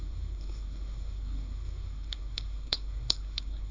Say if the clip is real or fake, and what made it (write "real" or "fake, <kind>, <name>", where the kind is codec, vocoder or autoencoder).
fake, codec, SNAC